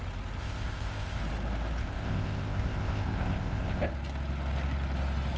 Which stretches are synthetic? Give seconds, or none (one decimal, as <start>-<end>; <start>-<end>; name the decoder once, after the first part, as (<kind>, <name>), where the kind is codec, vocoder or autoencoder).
0.4-1.2 (codec, ZipCodec); 1.8-3.9